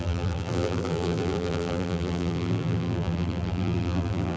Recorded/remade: remade